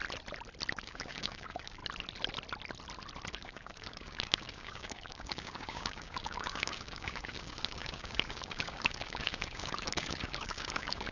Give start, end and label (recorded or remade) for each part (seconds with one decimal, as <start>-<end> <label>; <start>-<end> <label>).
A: 0.0-0.8 recorded; 0.8-1.8 remade; 1.8-3.3 recorded; 3.3-11.1 remade